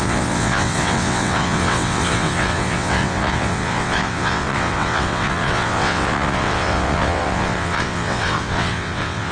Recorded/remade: remade